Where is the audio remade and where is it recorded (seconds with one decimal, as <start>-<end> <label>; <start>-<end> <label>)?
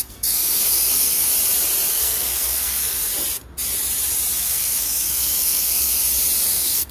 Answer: 0.0-1.3 remade; 1.3-1.9 recorded; 1.9-3.1 remade; 3.1-4.4 recorded; 4.4-6.0 remade; 6.0-6.5 recorded; 6.5-6.9 remade